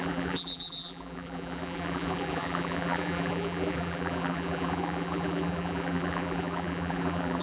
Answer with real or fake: fake